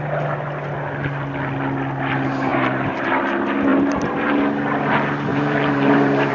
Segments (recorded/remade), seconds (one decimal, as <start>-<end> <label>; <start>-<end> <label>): 0.0-2.5 recorded; 2.5-3.2 remade; 3.2-3.7 recorded; 3.7-4.4 remade; 4.4-5.3 recorded; 5.3-6.3 remade